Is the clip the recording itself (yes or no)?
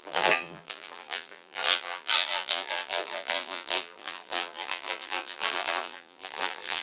no